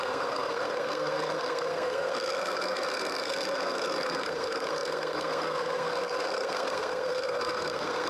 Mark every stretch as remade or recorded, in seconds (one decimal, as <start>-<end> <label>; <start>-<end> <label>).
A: 0.0-8.1 remade